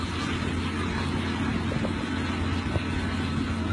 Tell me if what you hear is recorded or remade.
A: recorded